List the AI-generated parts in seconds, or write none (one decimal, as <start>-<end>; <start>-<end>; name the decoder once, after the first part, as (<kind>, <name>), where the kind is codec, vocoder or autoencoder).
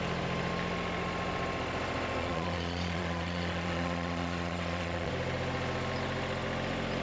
2.2-5.1 (vocoder, Vocos)